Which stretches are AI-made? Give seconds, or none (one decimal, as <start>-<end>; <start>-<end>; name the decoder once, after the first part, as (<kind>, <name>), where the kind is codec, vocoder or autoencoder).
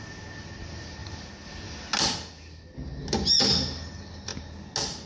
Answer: none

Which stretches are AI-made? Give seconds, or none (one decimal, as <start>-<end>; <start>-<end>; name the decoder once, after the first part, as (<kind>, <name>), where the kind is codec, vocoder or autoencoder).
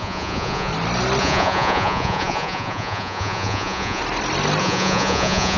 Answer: 0.0-0.7 (vocoder, Vocos); 1.2-4.0; 4.6-5.6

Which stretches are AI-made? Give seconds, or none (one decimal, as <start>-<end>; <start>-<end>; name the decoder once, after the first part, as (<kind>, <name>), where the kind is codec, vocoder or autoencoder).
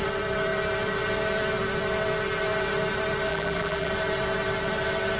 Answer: 3.3-3.9 (vocoder, BigVGAN v2)